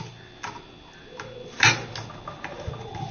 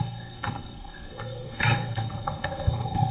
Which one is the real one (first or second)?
first